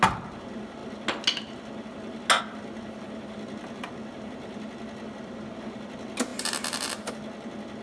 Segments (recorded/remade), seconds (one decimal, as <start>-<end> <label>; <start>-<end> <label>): 0.0-7.8 recorded